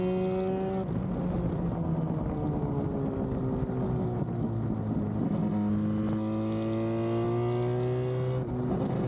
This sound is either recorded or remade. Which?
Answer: recorded